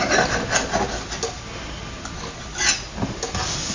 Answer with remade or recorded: recorded